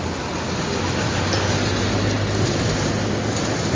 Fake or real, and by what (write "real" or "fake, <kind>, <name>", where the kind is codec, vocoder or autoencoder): real